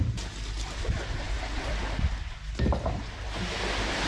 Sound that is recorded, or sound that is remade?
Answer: recorded